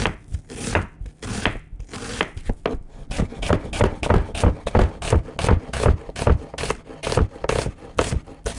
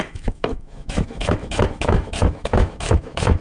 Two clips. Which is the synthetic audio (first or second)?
second